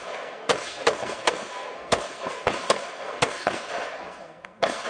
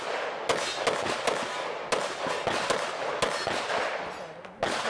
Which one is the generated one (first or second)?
first